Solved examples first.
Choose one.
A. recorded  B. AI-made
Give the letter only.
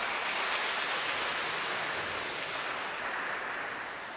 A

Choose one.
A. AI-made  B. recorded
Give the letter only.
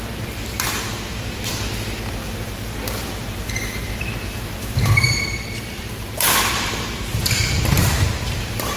A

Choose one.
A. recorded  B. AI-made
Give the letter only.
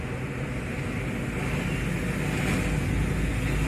A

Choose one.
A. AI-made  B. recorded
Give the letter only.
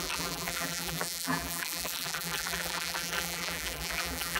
A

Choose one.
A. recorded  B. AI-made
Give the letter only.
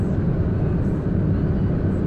A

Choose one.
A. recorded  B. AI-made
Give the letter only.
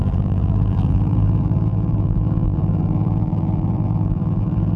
B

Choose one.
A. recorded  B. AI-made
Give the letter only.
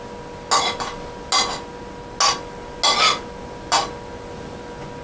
A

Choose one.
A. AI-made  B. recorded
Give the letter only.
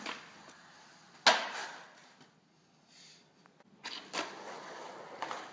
B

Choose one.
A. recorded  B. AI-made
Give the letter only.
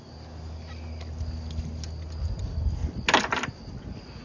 A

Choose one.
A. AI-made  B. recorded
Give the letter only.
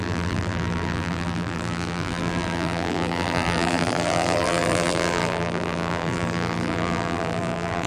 A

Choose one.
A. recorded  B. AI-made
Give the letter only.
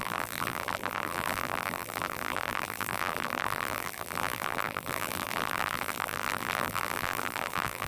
B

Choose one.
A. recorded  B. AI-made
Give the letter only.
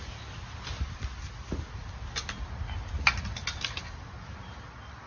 A